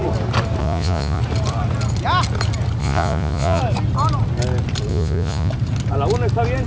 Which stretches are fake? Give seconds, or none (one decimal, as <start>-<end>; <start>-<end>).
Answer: 0.6-1.2; 2.8-3.6; 4.9-5.5